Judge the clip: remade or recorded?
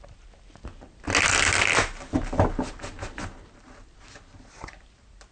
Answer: recorded